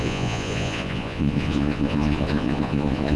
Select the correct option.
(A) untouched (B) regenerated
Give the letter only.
B